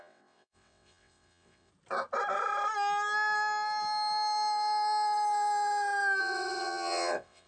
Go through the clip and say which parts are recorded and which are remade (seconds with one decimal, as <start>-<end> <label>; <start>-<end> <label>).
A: 0.0-1.7 remade; 1.7-6.2 recorded; 6.2-7.5 remade